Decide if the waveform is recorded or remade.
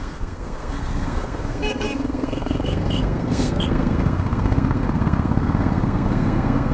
remade